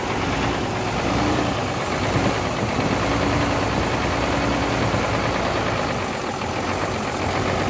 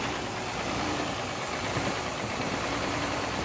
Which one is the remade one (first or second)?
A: second